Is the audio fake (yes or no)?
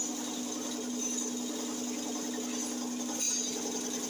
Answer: no